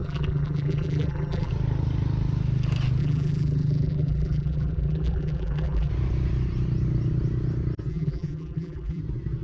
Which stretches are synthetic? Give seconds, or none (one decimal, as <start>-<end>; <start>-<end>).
0.0-1.5; 3.0-5.9; 7.9-9.0